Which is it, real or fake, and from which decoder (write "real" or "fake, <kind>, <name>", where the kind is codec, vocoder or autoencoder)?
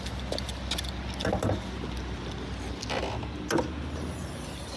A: real